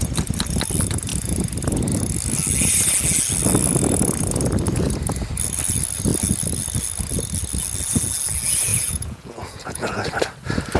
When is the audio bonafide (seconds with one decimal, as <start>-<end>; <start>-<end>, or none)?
0.0-8.7; 10.0-10.8